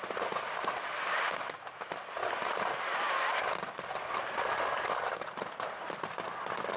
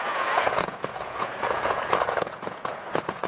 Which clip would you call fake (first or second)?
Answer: second